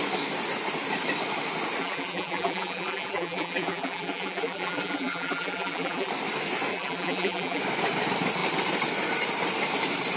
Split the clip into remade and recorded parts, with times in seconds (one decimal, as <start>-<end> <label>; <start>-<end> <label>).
0.0-1.8 recorded; 1.8-6.1 remade; 6.1-6.7 recorded; 6.7-7.6 remade; 7.6-10.2 recorded